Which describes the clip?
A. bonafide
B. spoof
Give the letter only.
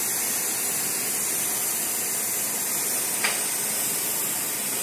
A